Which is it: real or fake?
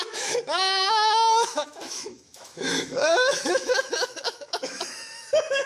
fake